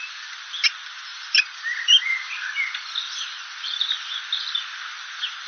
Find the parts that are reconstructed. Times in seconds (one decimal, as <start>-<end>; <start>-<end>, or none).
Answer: 1.1-4.4